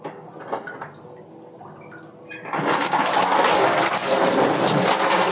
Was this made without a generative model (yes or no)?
yes